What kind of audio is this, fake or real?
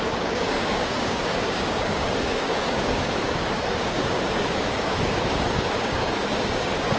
fake